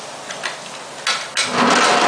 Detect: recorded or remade recorded